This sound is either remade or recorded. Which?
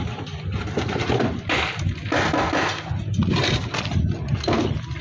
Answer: recorded